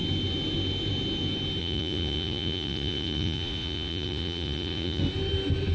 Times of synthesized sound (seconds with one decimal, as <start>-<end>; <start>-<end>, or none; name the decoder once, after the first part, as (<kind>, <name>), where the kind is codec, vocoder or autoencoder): 1.6-5.0 (vocoder, Vocos)